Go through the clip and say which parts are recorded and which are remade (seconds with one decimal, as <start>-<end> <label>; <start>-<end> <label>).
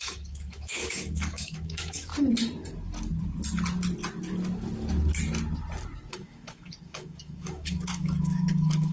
0.0-2.1 remade; 2.1-6.1 recorded; 6.1-8.9 remade